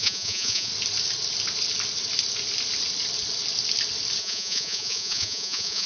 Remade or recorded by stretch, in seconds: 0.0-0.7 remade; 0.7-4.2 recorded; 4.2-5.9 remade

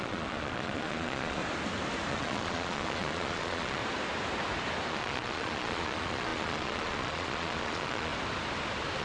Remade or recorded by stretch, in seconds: 0.0-1.4 remade; 1.4-2.1 recorded; 2.1-3.8 remade; 3.8-4.9 recorded; 4.9-8.1 remade; 8.1-9.0 recorded

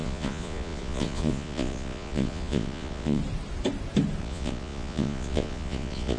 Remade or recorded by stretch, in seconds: 0.0-3.2 remade; 3.2-4.2 recorded; 4.2-6.2 remade

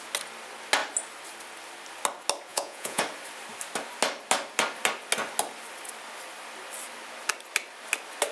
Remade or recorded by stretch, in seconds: 0.0-2.5 recorded; 2.5-3.0 remade; 3.0-8.3 recorded

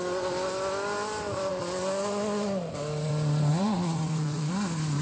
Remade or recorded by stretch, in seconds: 0.0-3.5 recorded; 3.5-4.5 remade; 4.5-5.0 recorded

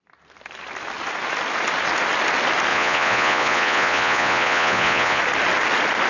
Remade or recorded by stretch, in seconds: 0.0-2.7 recorded; 2.7-5.2 remade; 5.2-6.1 recorded

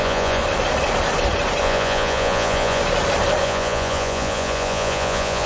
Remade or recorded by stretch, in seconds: 0.0-0.4 remade; 0.4-1.6 recorded; 1.6-2.8 remade; 2.8-3.4 recorded; 3.4-5.5 remade